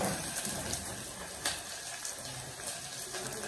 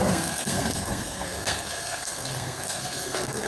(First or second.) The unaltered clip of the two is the first